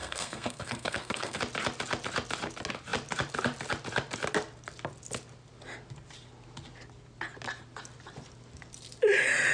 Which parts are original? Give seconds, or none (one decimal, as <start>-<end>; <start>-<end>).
1.4-9.5